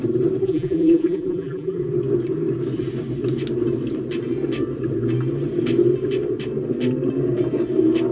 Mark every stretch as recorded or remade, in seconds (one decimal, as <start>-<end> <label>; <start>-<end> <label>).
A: 0.0-0.4 recorded; 0.4-1.8 remade; 1.8-8.1 recorded